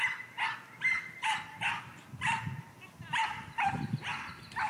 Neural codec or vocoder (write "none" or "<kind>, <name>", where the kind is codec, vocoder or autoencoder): vocoder, BigVGAN v2